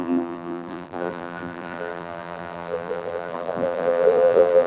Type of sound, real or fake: fake